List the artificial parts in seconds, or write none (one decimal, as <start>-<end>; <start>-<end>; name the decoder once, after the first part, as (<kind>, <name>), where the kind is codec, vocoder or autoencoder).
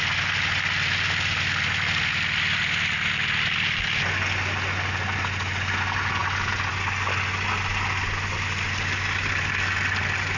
none